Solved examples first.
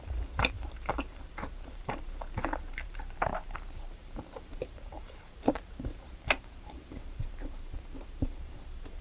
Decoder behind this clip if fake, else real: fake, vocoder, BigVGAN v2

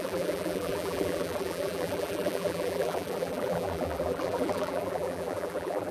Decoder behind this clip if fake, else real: fake, vocoder, BigVGAN v2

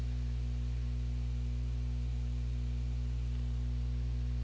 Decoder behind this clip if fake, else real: fake, vocoder, BigVGAN v2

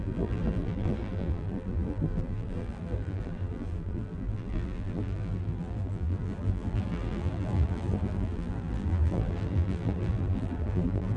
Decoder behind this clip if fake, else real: fake, vocoder, BigVGAN v2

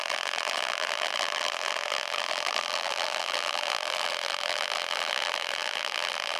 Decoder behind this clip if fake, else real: fake, vocoder, BigVGAN v2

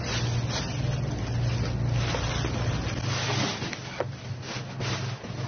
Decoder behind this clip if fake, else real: real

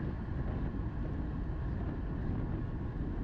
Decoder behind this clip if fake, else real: real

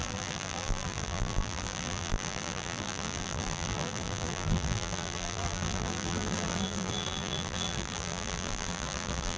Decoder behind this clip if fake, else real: fake, vocoder, BigVGAN v2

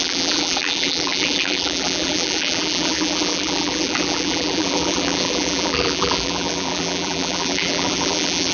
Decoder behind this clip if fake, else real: fake, vocoder, BigVGAN v2